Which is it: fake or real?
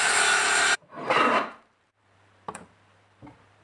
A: fake